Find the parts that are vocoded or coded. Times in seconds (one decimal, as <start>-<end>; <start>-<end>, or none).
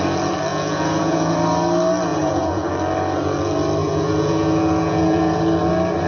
0.5-1.3; 2.1-2.7; 3.8-5.4